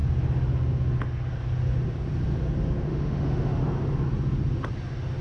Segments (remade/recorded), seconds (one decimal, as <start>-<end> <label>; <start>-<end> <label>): 0.0-2.9 recorded; 2.9-3.6 remade; 3.6-5.2 recorded